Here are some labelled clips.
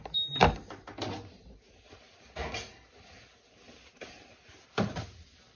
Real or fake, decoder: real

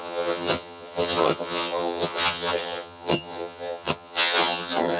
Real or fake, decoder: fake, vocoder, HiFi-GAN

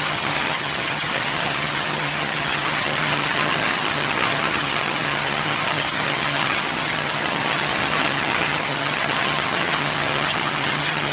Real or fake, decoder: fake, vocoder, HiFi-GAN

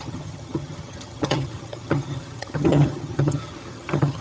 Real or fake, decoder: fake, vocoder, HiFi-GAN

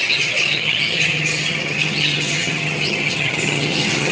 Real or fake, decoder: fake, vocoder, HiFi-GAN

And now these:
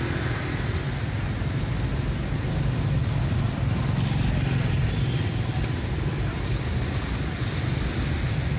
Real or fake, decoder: real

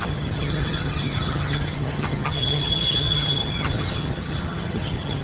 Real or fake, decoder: fake, vocoder, HiFi-GAN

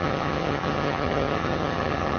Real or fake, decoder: fake, vocoder, HiFi-GAN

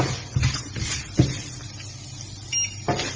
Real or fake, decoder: real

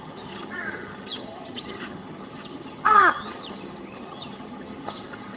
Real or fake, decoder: fake, vocoder, HiFi-GAN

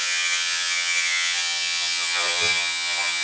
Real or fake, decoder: fake, vocoder, HiFi-GAN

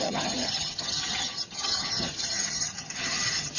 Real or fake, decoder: fake, vocoder, HiFi-GAN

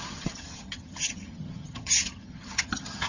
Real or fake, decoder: fake, vocoder, HiFi-GAN